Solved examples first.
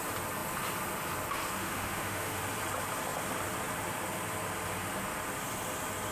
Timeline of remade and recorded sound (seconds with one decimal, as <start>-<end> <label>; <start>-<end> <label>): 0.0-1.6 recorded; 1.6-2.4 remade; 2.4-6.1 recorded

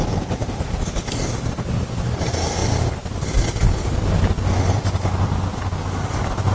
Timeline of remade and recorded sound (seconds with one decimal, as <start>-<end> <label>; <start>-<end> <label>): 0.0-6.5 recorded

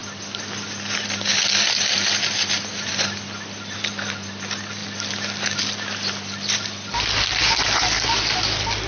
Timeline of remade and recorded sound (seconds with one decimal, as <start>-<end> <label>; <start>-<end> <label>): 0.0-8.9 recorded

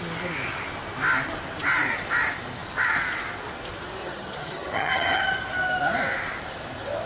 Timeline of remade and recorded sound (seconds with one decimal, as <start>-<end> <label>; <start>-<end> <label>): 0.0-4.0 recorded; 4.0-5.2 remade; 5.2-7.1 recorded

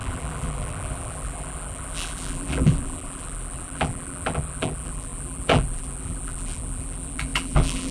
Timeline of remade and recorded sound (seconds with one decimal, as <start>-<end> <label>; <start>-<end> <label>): 0.0-7.9 remade